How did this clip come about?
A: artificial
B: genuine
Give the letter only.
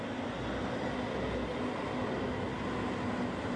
B